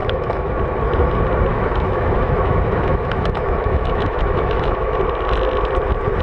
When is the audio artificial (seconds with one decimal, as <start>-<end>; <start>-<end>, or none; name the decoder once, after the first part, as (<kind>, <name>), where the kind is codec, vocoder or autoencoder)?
0.0-0.6 (autoencoder, DAC-VAE); 1.5-5.0